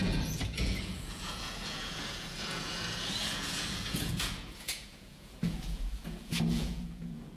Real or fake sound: fake